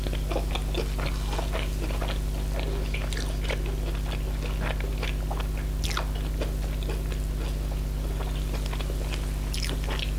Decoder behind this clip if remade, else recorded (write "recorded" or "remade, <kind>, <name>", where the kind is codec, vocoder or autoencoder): recorded